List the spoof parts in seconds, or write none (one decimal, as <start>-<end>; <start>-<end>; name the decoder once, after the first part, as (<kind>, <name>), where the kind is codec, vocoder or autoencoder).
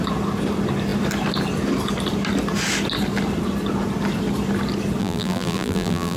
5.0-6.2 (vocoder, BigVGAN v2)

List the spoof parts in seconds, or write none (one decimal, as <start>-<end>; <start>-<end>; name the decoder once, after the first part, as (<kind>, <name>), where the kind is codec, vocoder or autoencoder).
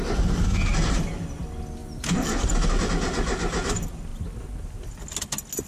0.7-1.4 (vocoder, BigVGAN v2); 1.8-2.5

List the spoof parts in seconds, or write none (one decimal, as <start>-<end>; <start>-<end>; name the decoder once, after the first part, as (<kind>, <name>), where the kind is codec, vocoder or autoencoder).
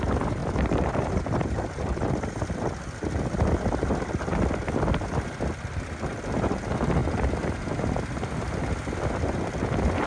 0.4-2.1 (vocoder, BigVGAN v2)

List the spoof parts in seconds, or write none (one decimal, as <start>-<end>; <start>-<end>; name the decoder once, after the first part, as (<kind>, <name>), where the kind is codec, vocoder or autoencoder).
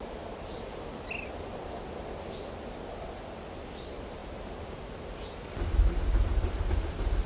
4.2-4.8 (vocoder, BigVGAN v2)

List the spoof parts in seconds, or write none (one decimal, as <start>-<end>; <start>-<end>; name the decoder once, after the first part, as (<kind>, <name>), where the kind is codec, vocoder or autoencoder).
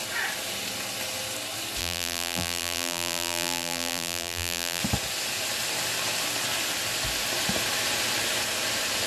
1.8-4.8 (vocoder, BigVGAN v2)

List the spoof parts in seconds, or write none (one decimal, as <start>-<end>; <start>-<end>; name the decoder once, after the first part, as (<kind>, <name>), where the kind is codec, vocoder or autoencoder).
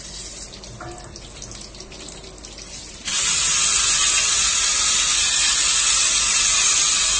none